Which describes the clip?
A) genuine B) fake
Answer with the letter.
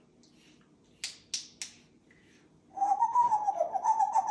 A